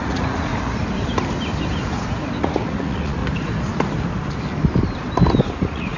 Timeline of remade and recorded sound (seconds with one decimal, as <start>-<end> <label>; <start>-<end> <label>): 0.0-0.5 remade; 0.5-2.4 recorded; 2.4-3.2 remade; 3.2-5.4 recorded; 5.4-6.0 remade